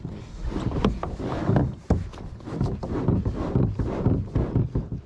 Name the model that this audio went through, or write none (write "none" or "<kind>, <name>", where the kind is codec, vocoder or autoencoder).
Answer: none